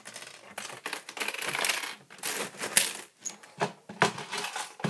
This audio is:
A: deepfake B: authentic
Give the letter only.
B